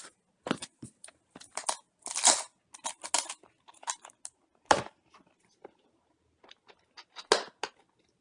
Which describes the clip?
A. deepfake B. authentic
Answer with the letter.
B